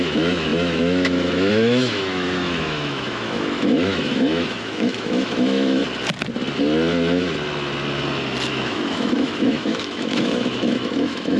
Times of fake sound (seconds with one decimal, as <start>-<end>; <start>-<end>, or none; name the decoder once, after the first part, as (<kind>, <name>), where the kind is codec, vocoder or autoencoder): 0.0-5.8 (autoencoder, DAC-VAE); 8.5-11.4